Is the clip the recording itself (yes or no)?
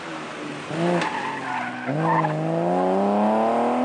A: yes